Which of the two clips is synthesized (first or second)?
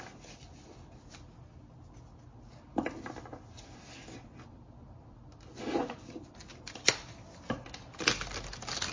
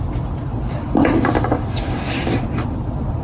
second